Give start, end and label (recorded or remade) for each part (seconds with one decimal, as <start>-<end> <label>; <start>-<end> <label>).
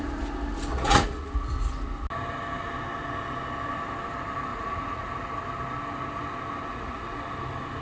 0.0-0.7 recorded; 0.7-1.3 remade; 1.3-4.5 recorded; 4.5-5.1 remade; 5.1-6.7 recorded; 6.7-7.2 remade; 7.2-7.8 recorded